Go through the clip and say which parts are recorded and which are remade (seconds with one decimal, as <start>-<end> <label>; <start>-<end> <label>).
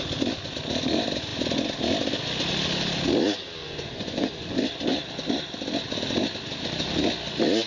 0.0-3.6 recorded; 3.6-4.4 remade; 4.4-7.7 recorded